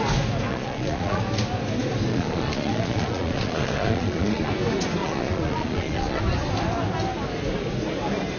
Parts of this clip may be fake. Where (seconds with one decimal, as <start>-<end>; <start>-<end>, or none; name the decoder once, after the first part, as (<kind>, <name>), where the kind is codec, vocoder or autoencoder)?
0.5-1.2 (vocoder, Vocos); 2.1-4.5; 5.0-6.2